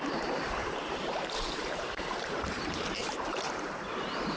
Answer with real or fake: fake